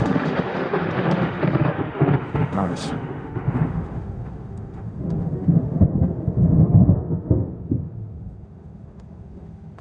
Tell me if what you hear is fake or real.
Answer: fake